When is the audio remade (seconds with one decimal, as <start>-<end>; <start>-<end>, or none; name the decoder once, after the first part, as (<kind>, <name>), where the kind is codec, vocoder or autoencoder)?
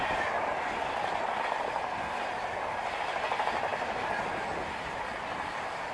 none